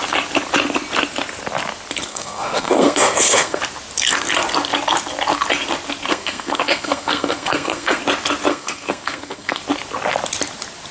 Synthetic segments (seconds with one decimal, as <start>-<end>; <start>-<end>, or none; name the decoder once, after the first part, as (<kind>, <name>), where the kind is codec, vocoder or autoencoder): 2.1-3.6 (codec, SNAC); 6.1-8.0; 8.5-9.6